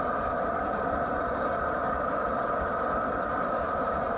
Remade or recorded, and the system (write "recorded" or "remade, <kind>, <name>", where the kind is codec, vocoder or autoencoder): recorded